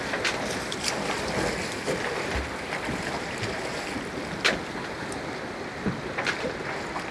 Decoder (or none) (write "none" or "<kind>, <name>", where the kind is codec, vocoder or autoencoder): none